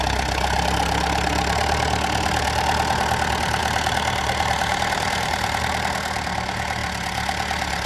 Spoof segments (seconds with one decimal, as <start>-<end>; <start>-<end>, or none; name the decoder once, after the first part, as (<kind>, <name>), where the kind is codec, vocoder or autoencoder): 3.6-5.6 (vocoder, BigVGAN v2)